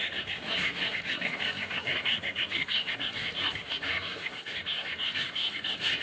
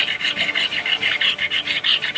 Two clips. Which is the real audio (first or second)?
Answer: second